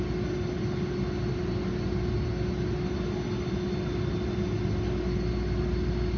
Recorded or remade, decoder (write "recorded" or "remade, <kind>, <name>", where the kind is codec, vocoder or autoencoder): recorded